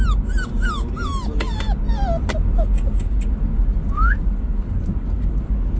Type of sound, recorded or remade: recorded